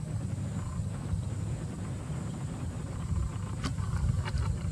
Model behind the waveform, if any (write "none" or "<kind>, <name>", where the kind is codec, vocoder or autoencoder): none